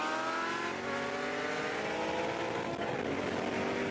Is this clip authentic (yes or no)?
yes